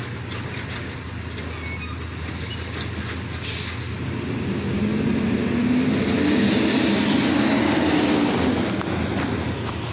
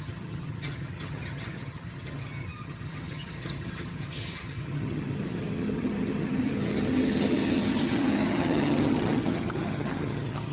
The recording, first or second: first